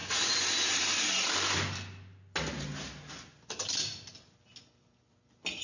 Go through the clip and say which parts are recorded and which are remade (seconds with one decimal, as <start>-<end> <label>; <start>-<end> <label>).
0.0-5.6 recorded